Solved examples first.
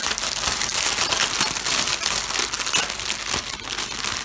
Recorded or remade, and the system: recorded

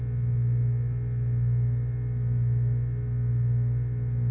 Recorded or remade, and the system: recorded